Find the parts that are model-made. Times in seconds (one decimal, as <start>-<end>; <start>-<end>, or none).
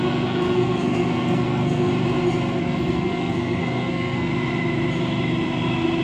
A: 0.0-1.9; 2.6-4.3